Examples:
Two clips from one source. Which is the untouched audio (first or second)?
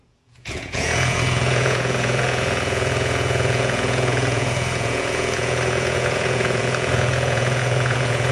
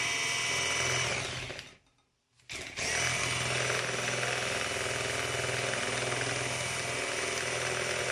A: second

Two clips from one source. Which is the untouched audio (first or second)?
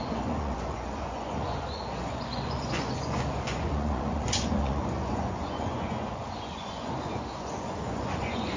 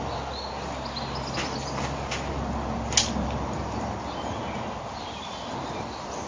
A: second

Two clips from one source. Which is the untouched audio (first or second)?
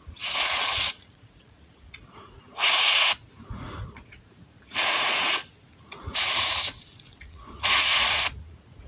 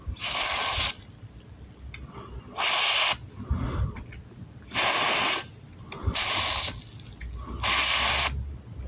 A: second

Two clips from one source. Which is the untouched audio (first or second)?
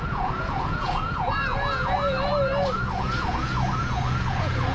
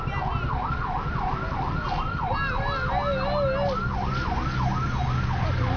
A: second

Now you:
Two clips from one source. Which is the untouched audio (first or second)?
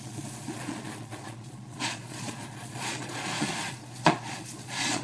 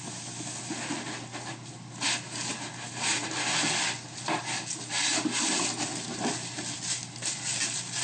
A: second